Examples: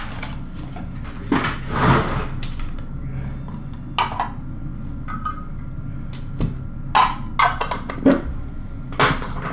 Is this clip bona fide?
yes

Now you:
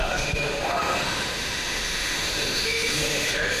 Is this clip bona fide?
no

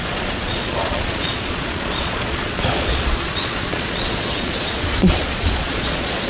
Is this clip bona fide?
no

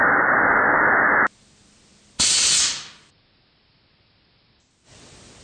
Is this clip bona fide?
yes